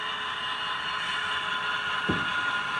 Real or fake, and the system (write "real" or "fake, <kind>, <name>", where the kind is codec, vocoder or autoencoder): real